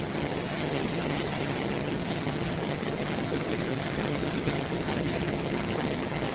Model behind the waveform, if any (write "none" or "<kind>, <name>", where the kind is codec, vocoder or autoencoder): vocoder, HiFi-GAN